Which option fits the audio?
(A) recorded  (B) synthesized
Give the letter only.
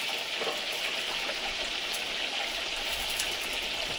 A